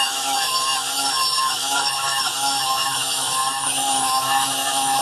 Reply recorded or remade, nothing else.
remade